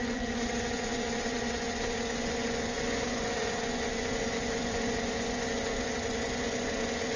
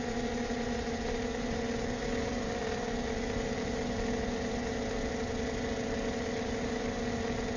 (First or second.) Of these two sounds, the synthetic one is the first